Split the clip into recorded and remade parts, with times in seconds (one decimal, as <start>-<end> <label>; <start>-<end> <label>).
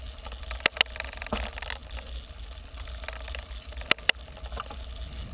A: 0.0-5.3 recorded